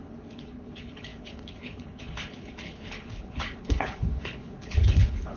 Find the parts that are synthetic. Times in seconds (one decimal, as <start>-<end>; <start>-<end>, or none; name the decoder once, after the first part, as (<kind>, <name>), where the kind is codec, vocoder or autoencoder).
0.0-5.4 (codec, HILCodec)